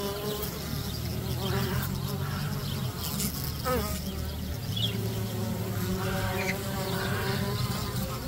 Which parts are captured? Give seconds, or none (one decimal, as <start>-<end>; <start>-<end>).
0.0-8.3